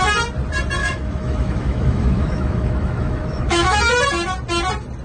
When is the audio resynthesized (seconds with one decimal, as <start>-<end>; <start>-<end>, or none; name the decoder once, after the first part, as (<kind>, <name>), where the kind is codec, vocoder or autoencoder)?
0.8-3.8 (autoencoder, DAC-VAE)

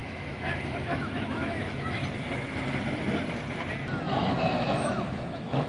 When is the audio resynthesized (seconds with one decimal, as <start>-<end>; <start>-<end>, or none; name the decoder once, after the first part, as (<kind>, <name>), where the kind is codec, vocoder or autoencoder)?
0.0-2.0 (autoencoder, DAC-VAE); 4.3-5.7

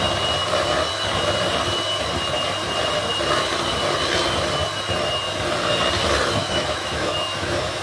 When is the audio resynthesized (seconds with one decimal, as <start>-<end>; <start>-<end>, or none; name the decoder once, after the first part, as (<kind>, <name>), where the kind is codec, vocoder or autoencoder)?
6.4-7.8 (autoencoder, DAC-VAE)

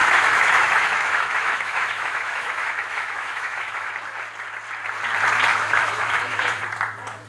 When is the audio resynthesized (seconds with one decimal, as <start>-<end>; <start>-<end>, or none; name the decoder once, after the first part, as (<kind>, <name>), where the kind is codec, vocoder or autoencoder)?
0.0-3.9 (autoencoder, DAC-VAE); 5.5-6.6